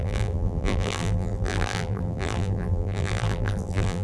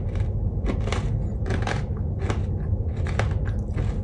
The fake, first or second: first